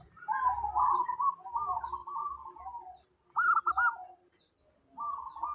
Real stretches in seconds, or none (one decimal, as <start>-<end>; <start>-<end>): 0.0-2.0; 2.8-5.5